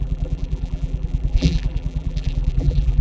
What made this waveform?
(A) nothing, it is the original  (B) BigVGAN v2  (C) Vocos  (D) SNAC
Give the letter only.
B